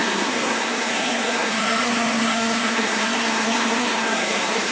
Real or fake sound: fake